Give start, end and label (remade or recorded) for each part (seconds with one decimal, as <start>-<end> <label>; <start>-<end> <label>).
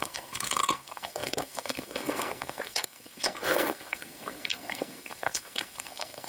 0.0-6.3 remade